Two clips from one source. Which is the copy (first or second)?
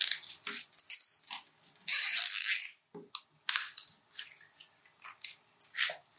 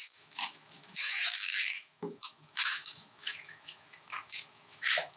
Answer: second